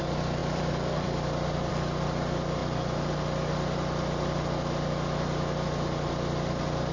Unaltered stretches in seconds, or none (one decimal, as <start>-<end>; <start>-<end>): 0.0-0.4; 1.7-6.9